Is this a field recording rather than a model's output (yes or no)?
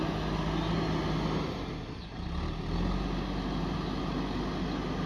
yes